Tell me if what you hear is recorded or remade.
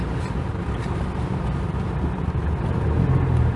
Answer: recorded